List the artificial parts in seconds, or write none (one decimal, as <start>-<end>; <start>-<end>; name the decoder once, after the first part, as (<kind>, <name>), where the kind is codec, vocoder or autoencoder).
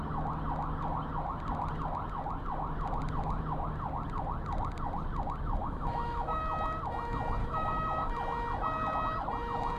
5.6-6.4 (autoencoder, DAC-VAE); 7.4-8.1